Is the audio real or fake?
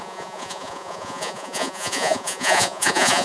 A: fake